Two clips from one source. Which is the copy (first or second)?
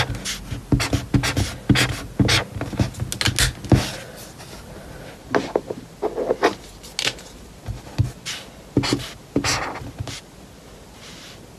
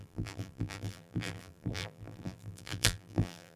second